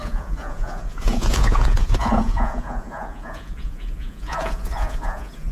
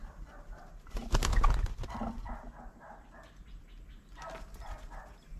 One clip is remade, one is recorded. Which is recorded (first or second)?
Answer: second